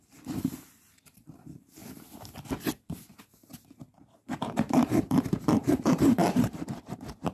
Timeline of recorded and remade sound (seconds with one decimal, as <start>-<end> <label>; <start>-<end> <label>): 0.0-1.8 remade; 1.8-3.9 recorded; 3.9-7.3 remade